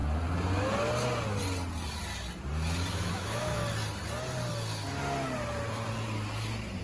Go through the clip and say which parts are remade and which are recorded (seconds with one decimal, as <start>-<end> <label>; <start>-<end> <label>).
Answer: 0.0-2.9 recorded; 2.9-3.6 remade; 3.6-6.8 recorded